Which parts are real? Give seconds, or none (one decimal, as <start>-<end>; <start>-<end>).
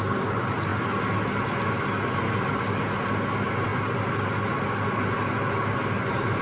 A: 0.0-6.4